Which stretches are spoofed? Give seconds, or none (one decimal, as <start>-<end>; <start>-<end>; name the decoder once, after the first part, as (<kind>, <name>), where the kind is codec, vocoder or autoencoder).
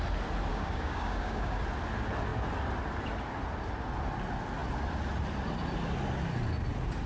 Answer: 0.5-1.6 (codec, DAC)